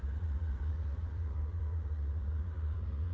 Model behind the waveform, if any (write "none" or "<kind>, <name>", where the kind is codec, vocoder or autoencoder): vocoder, Vocos